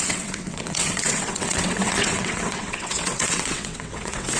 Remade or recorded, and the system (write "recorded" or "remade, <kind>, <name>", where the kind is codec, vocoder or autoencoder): remade, vocoder, WaveNeXt